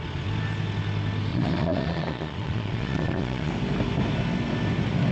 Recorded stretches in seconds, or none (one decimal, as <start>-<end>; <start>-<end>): 0.0-1.3; 3.5-5.1